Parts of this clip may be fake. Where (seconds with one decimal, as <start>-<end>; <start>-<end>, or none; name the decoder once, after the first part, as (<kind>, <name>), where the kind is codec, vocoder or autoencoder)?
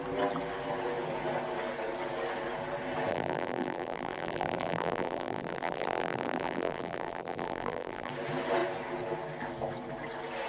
3.1-8.1 (vocoder, BigVGAN v2)